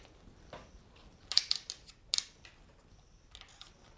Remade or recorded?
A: recorded